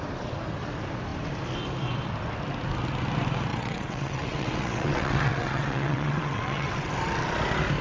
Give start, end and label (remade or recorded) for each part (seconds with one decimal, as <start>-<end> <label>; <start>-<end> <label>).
0.0-3.5 recorded; 3.5-6.9 remade; 6.9-7.8 recorded